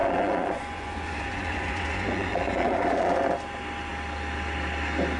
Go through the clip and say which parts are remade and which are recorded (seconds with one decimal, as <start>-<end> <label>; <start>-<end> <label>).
0.0-3.1 remade; 3.1-5.2 recorded